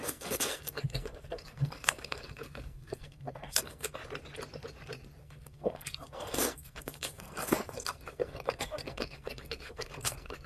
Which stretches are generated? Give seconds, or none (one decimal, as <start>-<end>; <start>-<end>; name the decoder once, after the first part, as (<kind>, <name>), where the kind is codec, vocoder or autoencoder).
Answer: 0.0-4.0 (codec, SNAC); 5.2-10.5